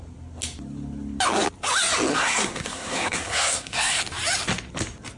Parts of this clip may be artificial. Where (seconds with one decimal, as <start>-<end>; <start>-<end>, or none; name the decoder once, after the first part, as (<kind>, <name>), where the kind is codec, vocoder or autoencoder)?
2.1-4.0 (codec, SNAC)